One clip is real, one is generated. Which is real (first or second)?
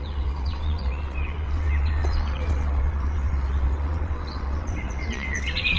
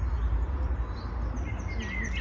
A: second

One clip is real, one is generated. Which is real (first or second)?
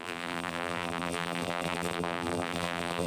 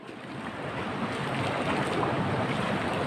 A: second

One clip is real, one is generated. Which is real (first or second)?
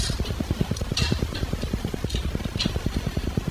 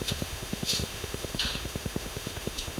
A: first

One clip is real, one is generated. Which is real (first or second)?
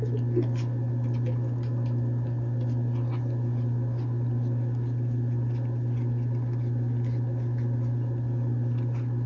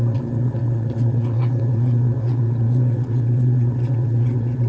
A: first